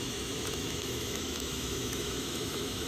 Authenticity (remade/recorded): remade